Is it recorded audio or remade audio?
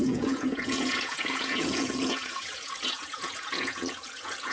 remade